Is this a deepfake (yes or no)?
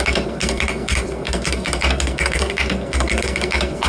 yes